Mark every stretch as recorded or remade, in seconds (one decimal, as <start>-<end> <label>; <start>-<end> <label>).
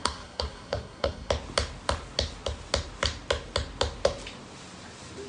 0.0-1.3 remade; 1.3-5.3 recorded